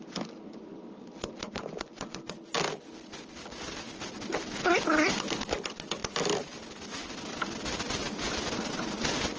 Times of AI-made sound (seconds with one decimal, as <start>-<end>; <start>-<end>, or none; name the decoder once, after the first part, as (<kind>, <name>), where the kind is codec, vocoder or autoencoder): none